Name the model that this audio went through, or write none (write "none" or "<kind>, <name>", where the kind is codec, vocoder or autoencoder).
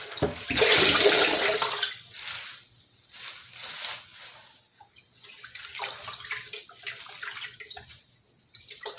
none